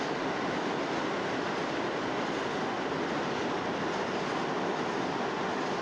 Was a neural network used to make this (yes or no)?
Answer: no